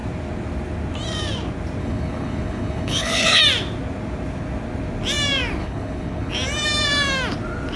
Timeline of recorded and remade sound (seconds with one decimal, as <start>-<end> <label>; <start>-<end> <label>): 0.0-1.8 recorded; 1.8-3.4 remade; 3.4-5.6 recorded; 5.6-6.3 remade; 6.3-7.8 recorded